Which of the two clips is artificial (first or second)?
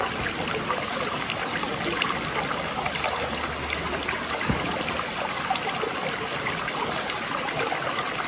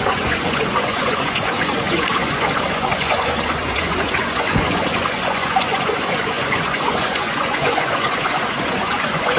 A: second